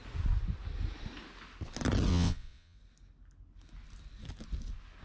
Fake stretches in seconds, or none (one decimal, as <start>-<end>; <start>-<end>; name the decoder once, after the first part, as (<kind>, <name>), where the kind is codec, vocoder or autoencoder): 2.1-2.8 (vocoder, WaveNeXt)